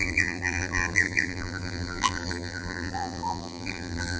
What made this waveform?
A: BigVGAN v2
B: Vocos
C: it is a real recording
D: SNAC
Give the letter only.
A